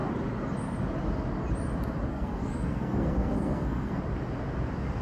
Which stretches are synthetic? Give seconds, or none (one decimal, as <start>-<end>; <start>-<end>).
2.1-4.0